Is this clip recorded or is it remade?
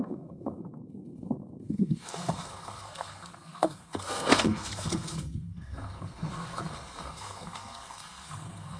remade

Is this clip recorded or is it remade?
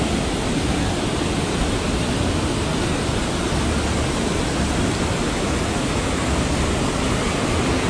recorded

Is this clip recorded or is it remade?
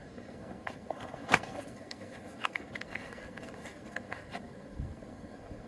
remade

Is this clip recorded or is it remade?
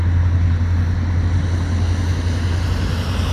recorded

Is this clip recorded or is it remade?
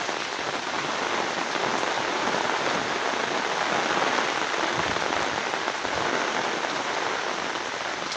recorded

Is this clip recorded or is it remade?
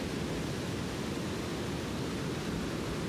recorded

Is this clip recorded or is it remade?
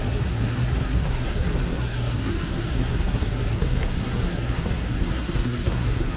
remade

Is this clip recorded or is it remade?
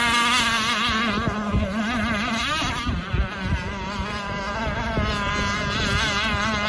recorded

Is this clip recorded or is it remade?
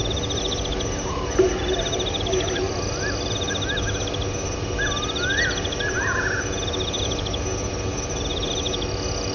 recorded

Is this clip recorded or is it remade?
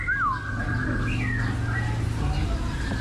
recorded